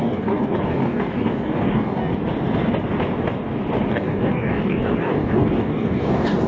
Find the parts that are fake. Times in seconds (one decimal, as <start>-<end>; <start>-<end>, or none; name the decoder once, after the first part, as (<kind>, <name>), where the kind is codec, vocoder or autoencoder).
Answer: 0.0-2.1 (codec, DAC); 3.9-6.5